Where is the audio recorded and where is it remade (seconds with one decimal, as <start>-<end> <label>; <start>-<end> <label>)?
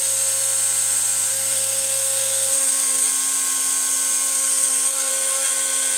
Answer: 0.0-1.3 recorded; 1.3-3.1 remade; 3.1-4.3 recorded; 4.3-5.1 remade; 5.1-6.0 recorded